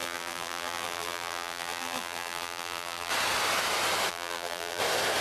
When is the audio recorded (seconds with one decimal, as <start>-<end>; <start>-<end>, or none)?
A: 3.1-4.1; 4.8-5.2